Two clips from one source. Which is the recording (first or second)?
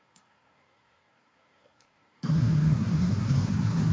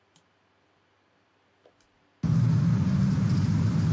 second